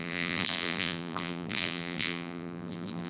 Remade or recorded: remade